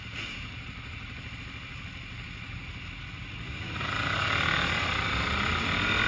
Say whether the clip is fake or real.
real